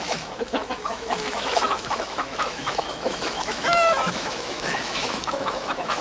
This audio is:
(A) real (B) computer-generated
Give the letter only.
B